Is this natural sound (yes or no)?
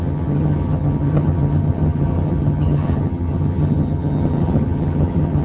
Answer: no